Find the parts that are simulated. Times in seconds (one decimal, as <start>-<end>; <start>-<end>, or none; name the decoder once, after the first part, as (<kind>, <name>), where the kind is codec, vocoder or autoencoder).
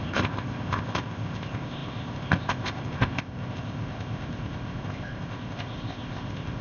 0.0-6.6 (codec, ZipCodec)